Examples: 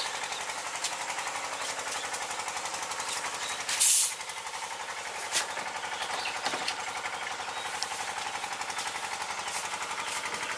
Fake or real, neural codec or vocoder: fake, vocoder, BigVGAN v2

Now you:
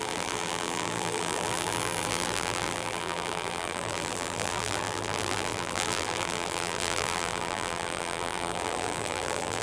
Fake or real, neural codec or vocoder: fake, vocoder, BigVGAN v2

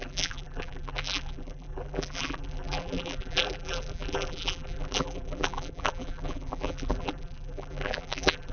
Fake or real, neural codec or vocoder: fake, vocoder, BigVGAN v2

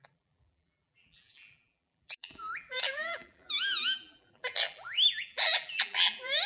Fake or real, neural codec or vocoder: fake, vocoder, BigVGAN v2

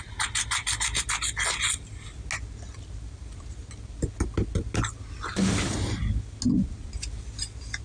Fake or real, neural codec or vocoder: real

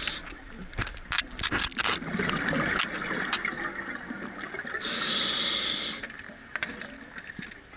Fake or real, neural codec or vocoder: real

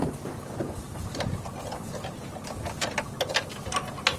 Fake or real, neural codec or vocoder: real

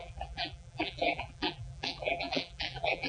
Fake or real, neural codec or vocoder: fake, vocoder, BigVGAN v2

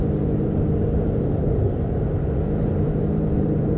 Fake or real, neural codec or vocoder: fake, vocoder, BigVGAN v2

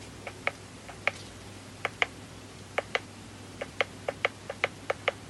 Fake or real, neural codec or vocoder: fake, vocoder, BigVGAN v2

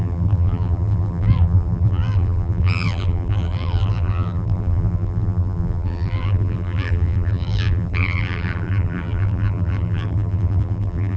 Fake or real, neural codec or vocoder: fake, vocoder, BigVGAN v2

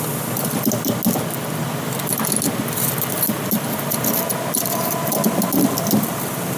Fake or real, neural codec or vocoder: real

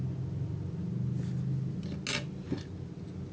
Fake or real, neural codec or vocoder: real